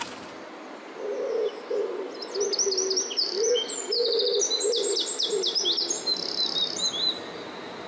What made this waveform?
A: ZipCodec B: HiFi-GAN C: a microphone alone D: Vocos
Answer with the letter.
C